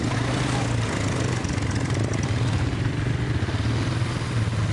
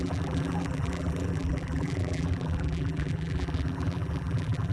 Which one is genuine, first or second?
first